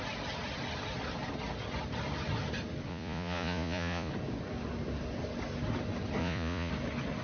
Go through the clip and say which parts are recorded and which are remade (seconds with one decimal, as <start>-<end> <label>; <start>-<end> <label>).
0.0-2.9 recorded; 2.9-4.1 remade; 4.1-6.2 recorded; 6.2-6.7 remade; 6.7-7.2 recorded